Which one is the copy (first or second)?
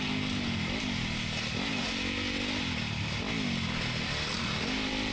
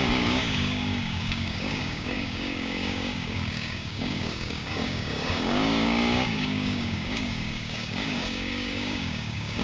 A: second